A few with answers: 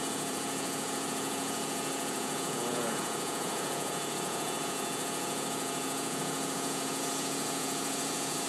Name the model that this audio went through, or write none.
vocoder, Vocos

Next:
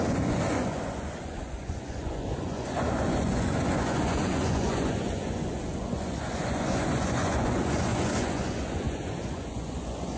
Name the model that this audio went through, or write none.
vocoder, Vocos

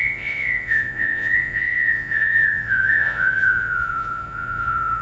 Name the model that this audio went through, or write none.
vocoder, Vocos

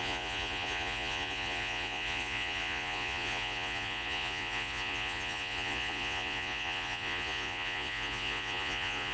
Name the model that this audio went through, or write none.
vocoder, Vocos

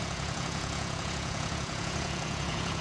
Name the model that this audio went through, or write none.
vocoder, Vocos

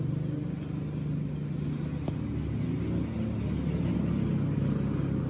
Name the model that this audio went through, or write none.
none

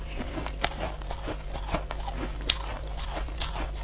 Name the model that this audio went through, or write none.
none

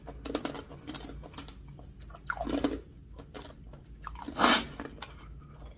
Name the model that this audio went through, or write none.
none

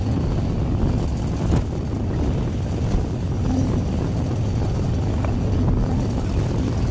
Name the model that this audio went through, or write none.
none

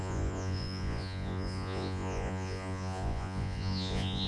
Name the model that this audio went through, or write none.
vocoder, Vocos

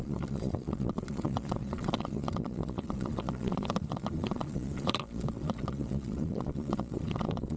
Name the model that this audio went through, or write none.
vocoder, Vocos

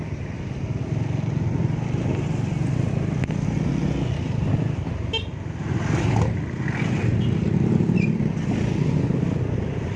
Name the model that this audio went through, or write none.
none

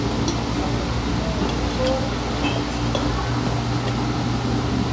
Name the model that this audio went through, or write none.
none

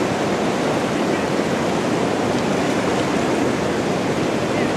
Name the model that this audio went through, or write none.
none